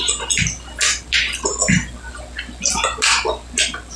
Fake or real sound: real